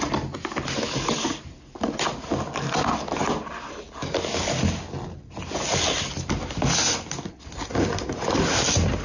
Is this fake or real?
real